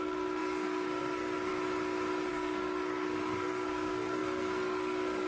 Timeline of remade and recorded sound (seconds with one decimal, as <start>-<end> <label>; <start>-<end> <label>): 0.0-1.5 remade; 1.5-2.3 recorded; 2.3-5.3 remade